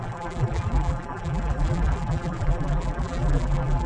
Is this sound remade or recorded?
remade